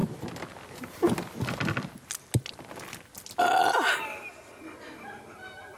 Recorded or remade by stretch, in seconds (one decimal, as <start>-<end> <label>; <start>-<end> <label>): 0.0-5.8 recorded